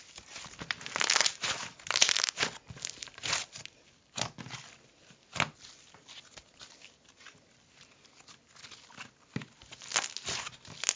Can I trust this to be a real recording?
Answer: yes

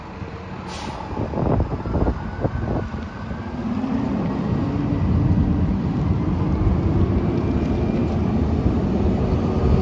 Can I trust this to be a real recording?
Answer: yes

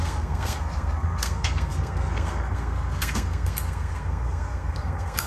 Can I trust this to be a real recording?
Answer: no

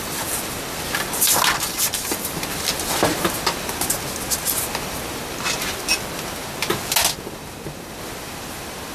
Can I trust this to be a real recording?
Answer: yes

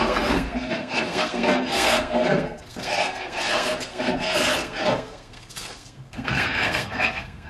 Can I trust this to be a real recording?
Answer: no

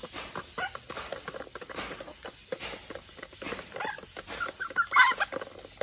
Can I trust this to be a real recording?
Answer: yes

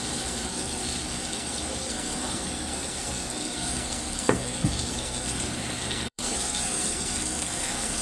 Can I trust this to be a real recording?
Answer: no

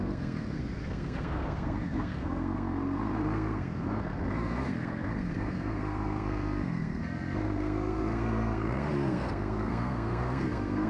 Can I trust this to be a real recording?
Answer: no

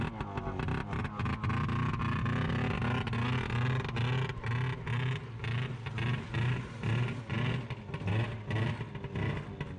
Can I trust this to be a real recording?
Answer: yes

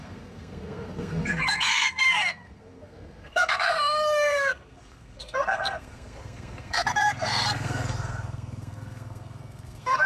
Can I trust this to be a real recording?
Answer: no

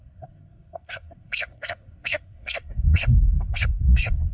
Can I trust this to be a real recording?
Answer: no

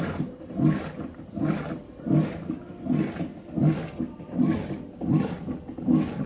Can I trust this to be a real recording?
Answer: yes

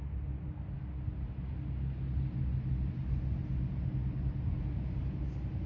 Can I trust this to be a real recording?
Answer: yes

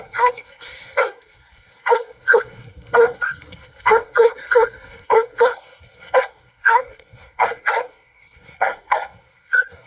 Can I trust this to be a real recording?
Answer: no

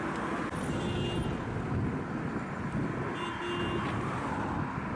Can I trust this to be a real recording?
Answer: yes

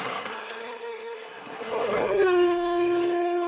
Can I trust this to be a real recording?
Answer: no